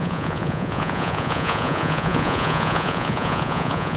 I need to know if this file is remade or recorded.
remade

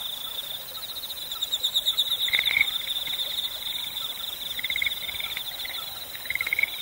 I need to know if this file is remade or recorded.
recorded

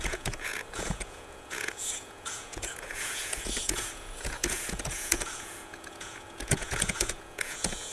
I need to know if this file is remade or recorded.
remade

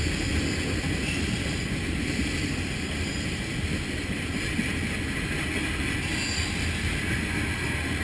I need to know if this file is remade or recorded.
recorded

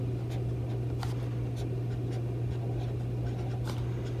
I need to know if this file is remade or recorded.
recorded